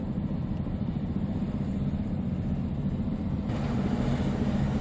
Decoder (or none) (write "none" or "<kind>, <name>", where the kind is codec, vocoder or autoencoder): none